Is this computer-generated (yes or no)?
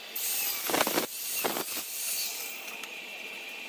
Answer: no